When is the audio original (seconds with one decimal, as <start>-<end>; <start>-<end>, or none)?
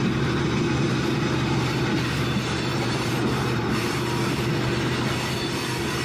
0.0-2.7; 3.9-6.0